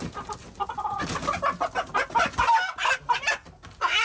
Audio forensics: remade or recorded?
recorded